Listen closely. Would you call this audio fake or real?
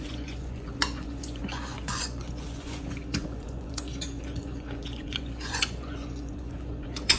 fake